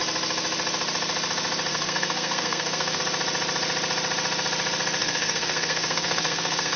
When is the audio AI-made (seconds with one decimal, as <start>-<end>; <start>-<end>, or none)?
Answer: 1.7-3.0; 5.0-6.8